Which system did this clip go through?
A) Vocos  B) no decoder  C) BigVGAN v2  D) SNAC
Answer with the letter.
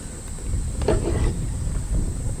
B